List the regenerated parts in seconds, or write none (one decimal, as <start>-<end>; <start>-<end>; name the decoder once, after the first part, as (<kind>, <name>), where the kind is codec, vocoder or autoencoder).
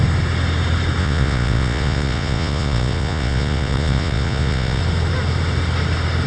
1.0-4.8 (vocoder, Vocos)